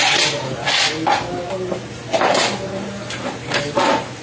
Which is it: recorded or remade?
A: recorded